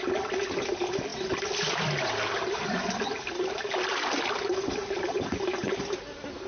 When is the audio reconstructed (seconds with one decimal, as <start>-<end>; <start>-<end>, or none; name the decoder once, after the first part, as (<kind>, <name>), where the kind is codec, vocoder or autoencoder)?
none